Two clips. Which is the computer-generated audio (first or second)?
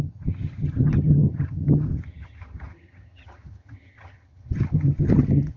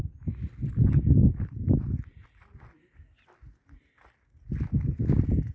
first